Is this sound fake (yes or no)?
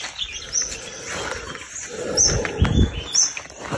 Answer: no